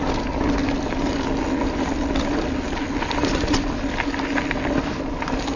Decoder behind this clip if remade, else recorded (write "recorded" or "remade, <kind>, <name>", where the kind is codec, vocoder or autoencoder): recorded